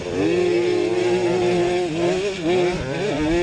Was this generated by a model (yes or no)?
no